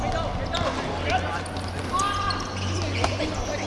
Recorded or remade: recorded